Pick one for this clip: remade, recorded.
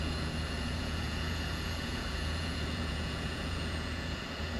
remade